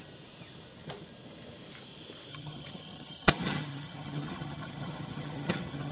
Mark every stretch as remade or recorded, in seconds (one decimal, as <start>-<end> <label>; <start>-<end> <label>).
0.0-2.3 recorded; 2.3-5.9 remade